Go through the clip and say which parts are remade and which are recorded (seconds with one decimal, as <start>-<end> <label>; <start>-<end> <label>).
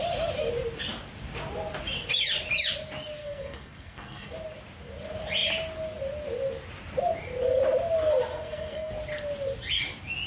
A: 0.0-3.2 recorded; 3.2-4.3 remade; 4.3-8.3 recorded; 8.3-8.9 remade; 8.9-10.3 recorded